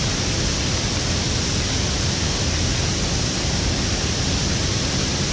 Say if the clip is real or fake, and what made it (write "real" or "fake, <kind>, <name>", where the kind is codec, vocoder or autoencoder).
real